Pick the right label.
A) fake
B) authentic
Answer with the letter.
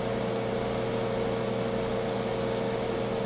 B